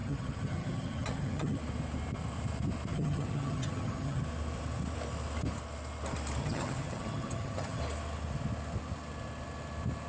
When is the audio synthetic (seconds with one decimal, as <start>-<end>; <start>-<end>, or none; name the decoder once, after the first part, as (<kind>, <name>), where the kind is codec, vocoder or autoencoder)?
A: 0.0-1.6 (vocoder, HiFi-GAN); 2.9-4.2; 6.4-7.8